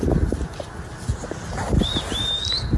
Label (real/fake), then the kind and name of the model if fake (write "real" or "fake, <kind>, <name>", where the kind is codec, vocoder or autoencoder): real